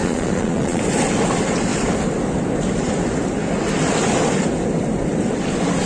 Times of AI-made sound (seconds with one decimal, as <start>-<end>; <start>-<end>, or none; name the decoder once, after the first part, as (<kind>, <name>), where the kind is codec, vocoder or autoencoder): 0.0-0.8 (vocoder, Vocos)